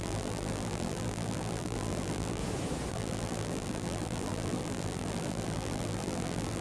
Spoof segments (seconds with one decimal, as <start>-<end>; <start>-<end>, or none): 0.0-2.4; 2.9-6.6